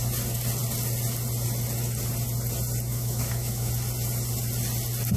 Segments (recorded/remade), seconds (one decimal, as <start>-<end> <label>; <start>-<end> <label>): 0.0-2.9 recorded; 2.9-3.7 remade; 3.7-5.2 recorded